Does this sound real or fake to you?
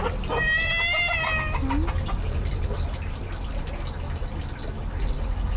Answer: real